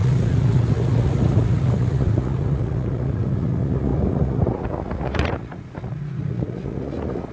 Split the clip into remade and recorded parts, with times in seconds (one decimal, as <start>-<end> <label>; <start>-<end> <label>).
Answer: 0.0-7.3 remade

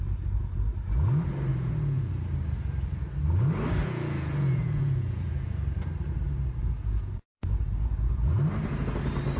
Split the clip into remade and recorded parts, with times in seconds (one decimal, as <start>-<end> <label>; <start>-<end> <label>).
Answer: 0.0-1.5 recorded; 1.5-2.1 remade; 2.1-3.8 recorded; 3.8-5.5 remade; 5.5-6.6 recorded; 6.6-8.4 remade; 8.4-9.4 recorded